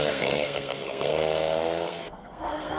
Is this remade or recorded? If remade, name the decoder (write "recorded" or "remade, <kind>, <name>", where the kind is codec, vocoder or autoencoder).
remade, codec, SNAC